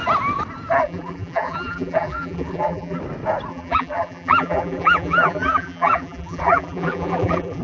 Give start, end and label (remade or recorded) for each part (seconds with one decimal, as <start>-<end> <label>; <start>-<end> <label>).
0.0-0.8 recorded; 0.8-3.0 remade; 3.0-3.5 recorded; 3.5-7.6 remade